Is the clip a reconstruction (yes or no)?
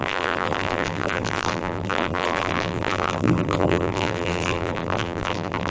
yes